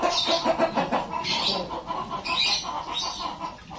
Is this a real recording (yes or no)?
yes